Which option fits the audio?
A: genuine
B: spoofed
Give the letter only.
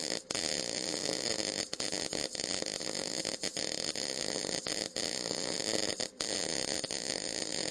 B